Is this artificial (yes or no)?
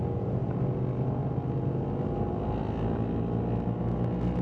no